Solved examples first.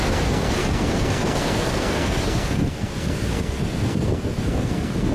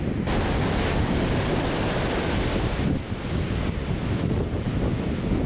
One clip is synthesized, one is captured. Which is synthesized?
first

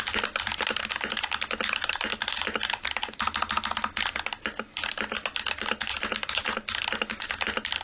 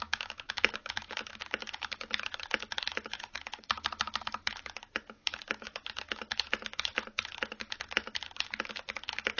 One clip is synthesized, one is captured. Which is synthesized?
second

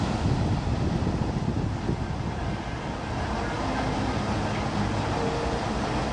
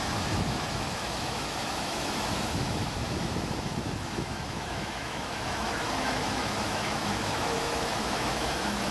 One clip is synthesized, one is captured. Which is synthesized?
second